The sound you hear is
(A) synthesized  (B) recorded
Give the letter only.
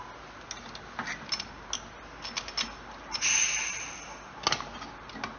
B